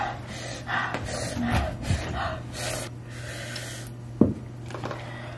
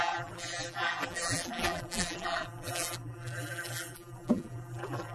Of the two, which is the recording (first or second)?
first